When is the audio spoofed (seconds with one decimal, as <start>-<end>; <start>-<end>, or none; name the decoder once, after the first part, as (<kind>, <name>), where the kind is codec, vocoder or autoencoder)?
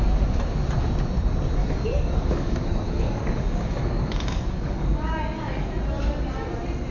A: 1.6-5.7 (codec, DAC)